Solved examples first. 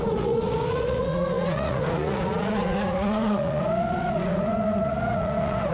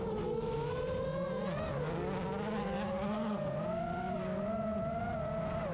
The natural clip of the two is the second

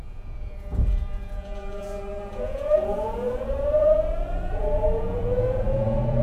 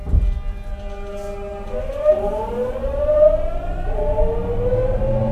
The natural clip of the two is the second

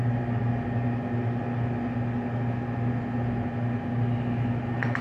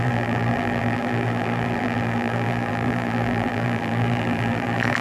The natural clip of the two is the first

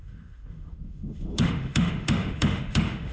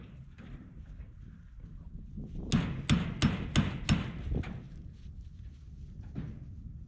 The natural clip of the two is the second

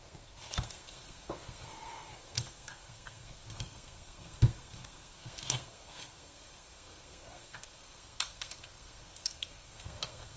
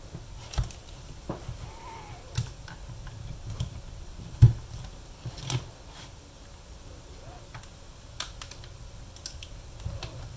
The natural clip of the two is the second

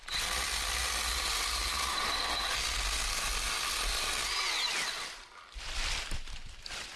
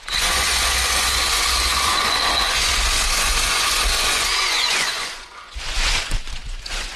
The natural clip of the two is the first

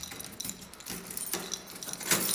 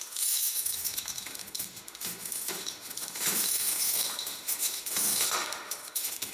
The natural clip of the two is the first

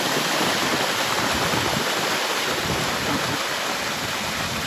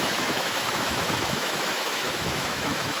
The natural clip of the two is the first